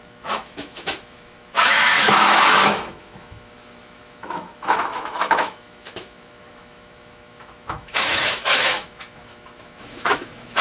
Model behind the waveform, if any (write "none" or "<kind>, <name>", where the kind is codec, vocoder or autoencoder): autoencoder, DAC-VAE